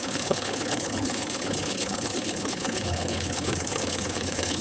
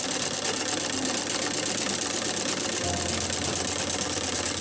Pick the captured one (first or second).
second